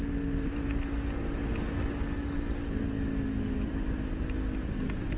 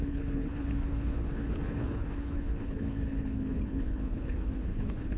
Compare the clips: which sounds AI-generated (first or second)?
second